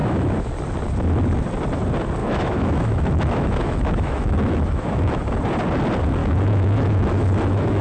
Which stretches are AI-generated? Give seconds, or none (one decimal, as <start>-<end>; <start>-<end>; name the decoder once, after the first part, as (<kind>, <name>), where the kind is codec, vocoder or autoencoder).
0.0-0.5 (autoencoder, DAC-VAE); 2.2-5.2; 6.2-7.8